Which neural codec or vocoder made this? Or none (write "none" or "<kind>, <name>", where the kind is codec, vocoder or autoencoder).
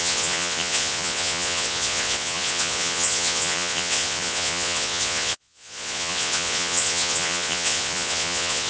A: vocoder, Vocos